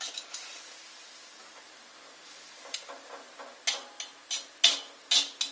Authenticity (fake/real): real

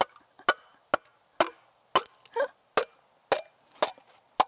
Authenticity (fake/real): real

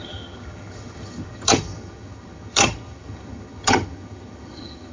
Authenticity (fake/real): fake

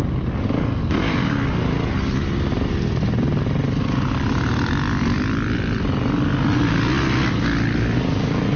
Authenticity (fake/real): real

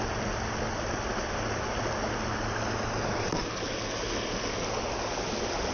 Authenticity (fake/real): real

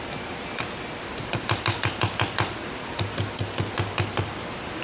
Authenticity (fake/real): real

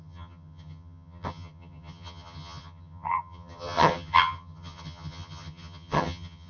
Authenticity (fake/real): fake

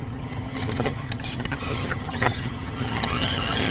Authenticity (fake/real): fake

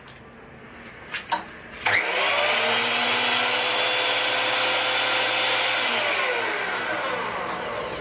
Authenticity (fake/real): real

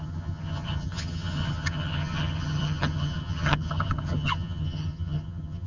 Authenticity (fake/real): fake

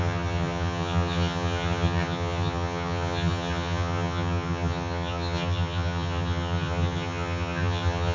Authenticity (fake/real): fake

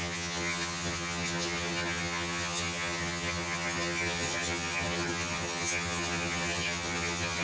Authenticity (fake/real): fake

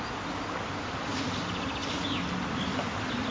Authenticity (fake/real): real